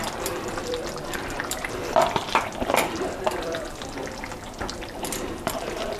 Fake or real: fake